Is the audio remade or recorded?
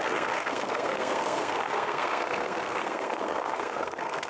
remade